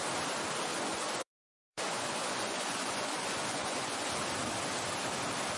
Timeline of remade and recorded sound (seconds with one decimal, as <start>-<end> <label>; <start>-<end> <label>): 0.0-0.7 recorded; 0.7-4.1 remade; 4.1-5.6 recorded

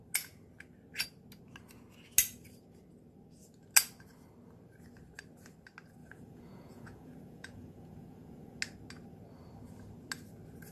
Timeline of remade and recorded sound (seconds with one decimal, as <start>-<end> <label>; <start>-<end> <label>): 0.0-6.0 recorded; 6.0-8.6 remade; 8.6-10.7 recorded

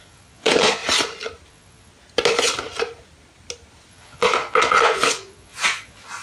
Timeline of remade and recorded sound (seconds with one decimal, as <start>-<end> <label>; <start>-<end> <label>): 0.0-0.8 remade; 0.8-1.5 recorded; 1.5-1.9 remade; 1.9-3.9 recorded; 3.9-6.2 remade

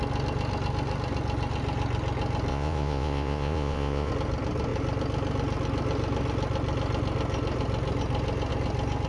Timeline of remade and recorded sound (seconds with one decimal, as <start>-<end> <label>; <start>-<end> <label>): 0.0-2.5 recorded; 2.5-4.1 remade; 4.1-9.1 recorded

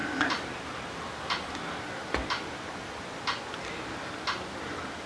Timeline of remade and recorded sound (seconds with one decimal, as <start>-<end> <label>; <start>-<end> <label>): 0.0-5.1 recorded

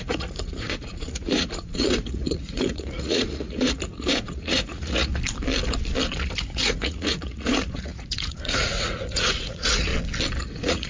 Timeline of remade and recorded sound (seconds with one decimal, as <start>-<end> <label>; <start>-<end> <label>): 0.0-5.1 remade; 5.1-6.4 recorded; 6.4-9.9 remade; 9.9-10.4 recorded; 10.4-10.9 remade